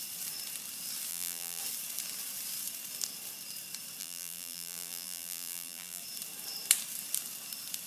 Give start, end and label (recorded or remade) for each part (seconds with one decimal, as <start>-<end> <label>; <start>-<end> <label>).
0.0-1.1 recorded; 1.1-1.6 remade; 1.6-4.0 recorded; 4.0-6.0 remade; 6.0-7.9 recorded